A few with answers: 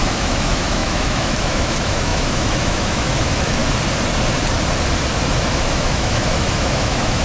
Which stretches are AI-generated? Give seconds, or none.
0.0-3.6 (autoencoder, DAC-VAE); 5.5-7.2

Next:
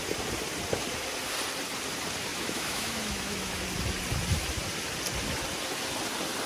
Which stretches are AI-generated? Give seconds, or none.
2.3-3.6 (autoencoder, DAC-VAE)

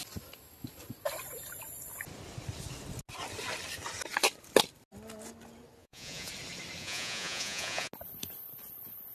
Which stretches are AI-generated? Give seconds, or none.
5.8-6.3 (vocoder, Vocos); 6.8-7.9